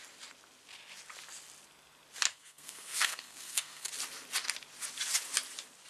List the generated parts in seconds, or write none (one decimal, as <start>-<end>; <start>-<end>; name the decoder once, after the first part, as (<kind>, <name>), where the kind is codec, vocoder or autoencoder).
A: 2.3-3.9 (codec, SNAC)